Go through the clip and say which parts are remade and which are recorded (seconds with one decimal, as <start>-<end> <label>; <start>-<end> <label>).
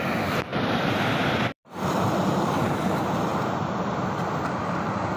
0.0-3.3 remade; 3.3-5.2 recorded